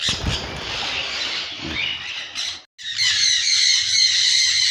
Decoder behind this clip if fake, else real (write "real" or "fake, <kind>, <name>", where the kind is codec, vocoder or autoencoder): real